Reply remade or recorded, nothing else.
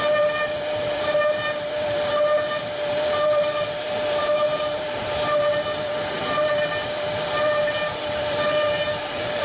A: remade